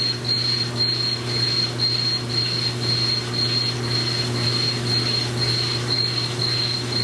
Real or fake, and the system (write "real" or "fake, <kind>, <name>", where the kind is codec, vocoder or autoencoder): real